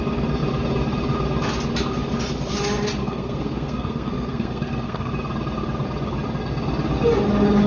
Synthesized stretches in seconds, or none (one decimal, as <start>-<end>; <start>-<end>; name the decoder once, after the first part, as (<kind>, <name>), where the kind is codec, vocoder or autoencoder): 3.0-5.1 (codec, SNAC)